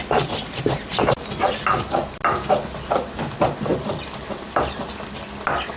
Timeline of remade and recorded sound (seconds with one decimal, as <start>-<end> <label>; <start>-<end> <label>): 0.0-5.8 recorded